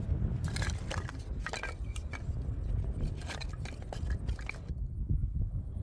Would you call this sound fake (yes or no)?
no